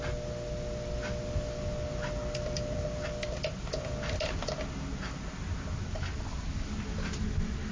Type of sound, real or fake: real